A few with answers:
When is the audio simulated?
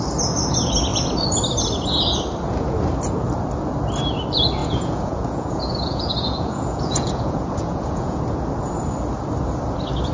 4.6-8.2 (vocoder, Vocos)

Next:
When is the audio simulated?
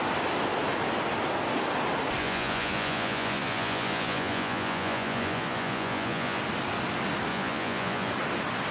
2.2-6.4 (vocoder, Vocos); 7.3-8.1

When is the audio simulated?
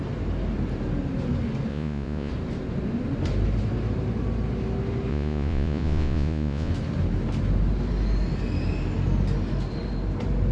1.7-2.3 (vocoder, Vocos); 5.1-6.7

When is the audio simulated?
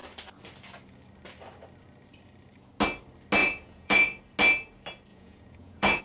3.4-4.2 (vocoder, Vocos); 5.1-6.0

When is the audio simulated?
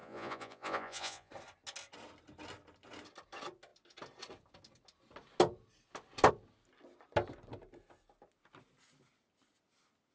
0.0-1.3 (vocoder, Vocos)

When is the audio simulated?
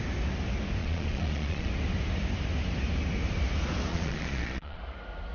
0.8-1.7 (vocoder, Vocos); 3.9-4.8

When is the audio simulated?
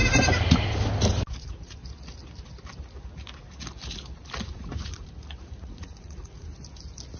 1.3-1.8 (vocoder, Vocos); 4.5-6.5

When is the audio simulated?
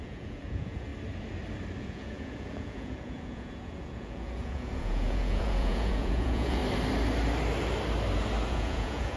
0.0-0.9 (vocoder, Vocos); 1.8-6.6; 8.5-9.2